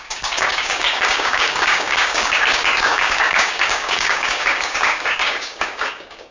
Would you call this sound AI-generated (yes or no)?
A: yes